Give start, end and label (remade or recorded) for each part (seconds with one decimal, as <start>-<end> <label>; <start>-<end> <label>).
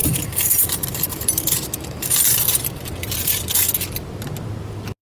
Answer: 0.0-2.8 remade; 2.8-5.1 recorded